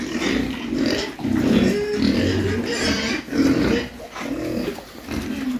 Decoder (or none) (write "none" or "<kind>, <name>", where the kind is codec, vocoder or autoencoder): none